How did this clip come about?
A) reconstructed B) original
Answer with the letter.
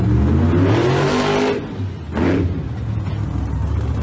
B